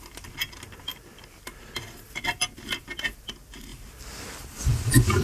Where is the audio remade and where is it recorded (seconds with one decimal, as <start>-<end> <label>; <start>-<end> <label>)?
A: 0.0-5.2 recorded